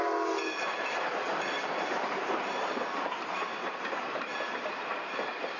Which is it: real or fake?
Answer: fake